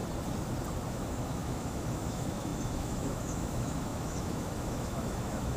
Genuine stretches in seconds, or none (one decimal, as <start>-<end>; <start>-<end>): 0.0-0.9